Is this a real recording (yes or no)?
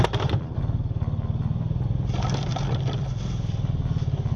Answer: yes